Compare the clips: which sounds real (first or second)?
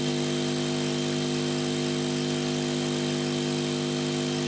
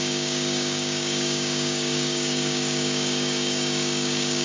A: first